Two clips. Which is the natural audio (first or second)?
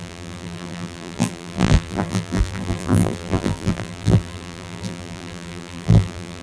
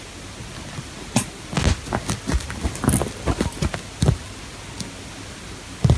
second